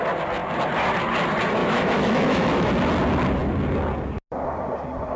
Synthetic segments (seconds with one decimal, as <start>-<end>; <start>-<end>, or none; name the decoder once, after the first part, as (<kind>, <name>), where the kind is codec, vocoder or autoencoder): 1.6-2.7 (autoencoder, DAC-VAE)